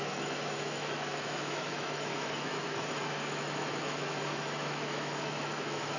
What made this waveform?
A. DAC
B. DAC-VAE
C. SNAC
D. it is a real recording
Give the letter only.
B